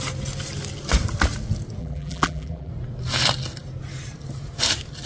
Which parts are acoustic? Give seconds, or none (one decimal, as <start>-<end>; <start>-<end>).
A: 0.0-1.8; 2.7-5.1